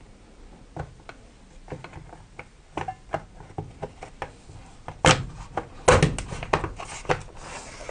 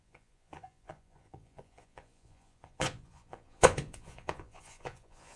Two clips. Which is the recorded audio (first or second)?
first